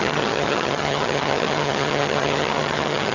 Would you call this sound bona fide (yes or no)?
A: no